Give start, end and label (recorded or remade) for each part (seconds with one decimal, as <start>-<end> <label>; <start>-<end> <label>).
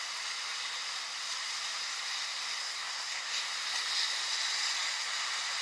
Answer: 0.0-2.6 recorded; 2.6-3.4 remade; 3.4-5.6 recorded